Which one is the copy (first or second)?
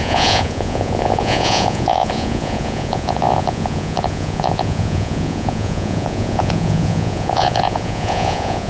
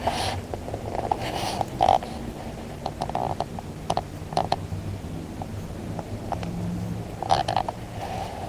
first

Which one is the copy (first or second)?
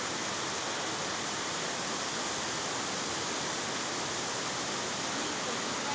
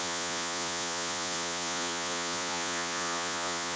second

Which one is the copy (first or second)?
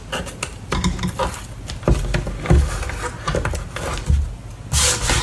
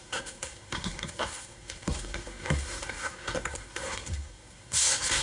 second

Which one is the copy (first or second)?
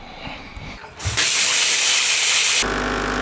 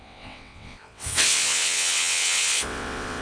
second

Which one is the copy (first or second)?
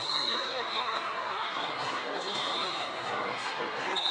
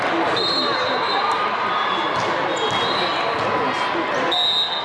first